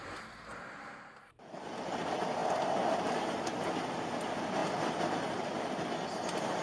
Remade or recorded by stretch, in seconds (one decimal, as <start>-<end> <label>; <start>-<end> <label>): 0.0-0.5 recorded; 0.5-1.3 remade; 1.3-2.4 recorded; 2.4-3.0 remade; 3.0-6.6 recorded